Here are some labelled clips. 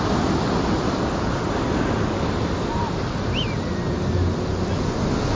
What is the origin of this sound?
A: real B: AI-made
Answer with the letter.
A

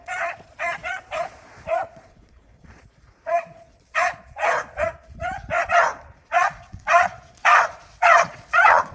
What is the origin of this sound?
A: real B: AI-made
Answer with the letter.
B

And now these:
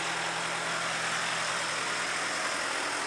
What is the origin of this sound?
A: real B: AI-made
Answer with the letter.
A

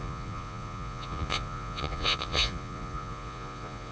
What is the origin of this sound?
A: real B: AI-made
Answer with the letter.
B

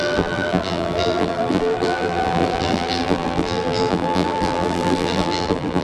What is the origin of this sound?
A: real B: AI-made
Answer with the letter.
B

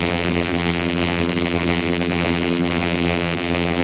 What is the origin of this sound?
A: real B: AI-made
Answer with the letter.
B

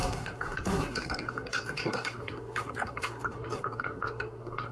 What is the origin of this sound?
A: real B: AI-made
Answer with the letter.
B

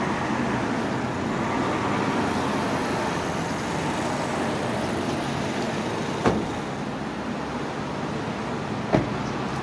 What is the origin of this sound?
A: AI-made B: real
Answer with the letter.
B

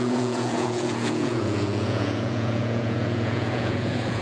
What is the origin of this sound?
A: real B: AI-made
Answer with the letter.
B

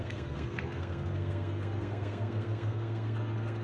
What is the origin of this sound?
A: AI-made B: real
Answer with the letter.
A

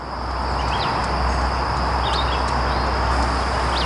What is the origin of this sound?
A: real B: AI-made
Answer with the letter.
A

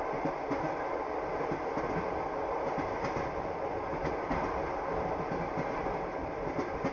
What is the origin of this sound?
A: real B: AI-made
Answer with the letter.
A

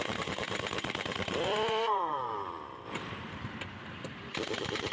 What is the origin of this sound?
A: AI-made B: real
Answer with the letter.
A